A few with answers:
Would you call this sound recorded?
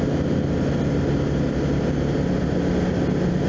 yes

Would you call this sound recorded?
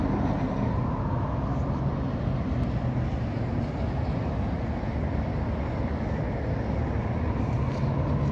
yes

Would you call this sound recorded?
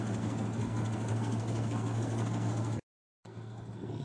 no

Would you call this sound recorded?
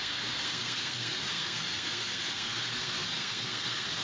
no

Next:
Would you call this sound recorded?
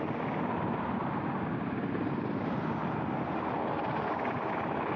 yes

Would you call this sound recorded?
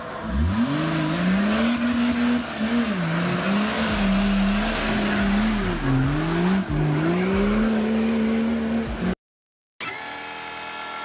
yes